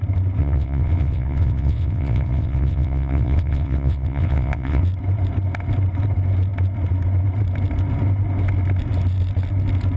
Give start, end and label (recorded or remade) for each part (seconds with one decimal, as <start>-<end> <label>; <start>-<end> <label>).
0.0-0.4 recorded; 0.4-4.8 remade; 4.8-10.0 recorded